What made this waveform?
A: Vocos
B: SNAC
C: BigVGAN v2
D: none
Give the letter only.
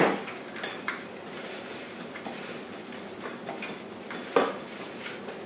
D